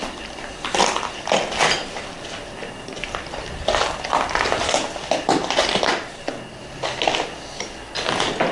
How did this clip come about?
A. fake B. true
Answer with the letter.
B